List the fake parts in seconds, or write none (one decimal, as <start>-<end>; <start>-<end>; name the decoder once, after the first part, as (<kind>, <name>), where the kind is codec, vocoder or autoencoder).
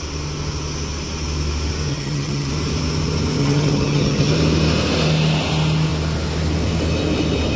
1.9-2.5 (vocoder, HiFi-GAN); 3.4-4.3